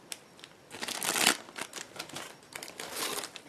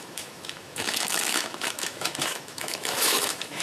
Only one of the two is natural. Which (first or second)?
first